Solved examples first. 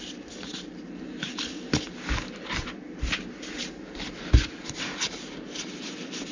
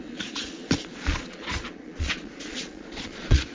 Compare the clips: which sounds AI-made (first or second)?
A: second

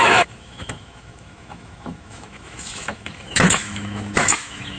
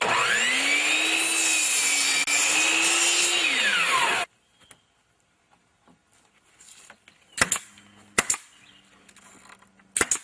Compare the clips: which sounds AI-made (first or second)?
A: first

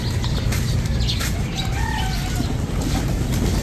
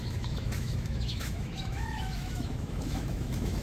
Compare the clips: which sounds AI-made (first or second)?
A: second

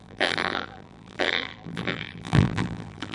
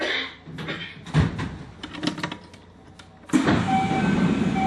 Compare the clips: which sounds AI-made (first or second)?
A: first